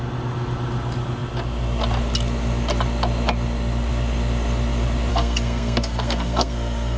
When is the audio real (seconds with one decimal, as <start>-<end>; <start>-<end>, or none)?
0.0-5.1